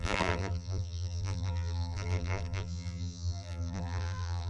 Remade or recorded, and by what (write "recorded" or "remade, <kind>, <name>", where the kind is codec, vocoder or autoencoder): remade, vocoder, BigVGAN v2